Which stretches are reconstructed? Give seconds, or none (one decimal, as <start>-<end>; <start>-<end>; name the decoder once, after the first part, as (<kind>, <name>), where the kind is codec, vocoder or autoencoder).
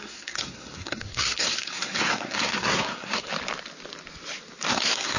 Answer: 0.0-3.3 (codec, SNAC); 4.7-5.2